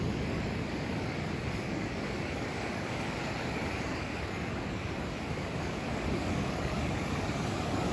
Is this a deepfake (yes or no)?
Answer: yes